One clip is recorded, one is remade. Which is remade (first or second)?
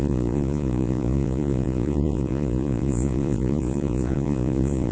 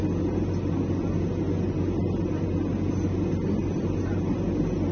first